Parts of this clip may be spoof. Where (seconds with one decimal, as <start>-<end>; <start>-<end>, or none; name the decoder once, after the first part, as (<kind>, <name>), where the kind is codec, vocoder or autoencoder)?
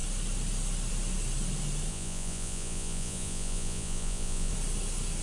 1.9-4.5 (vocoder, Vocos)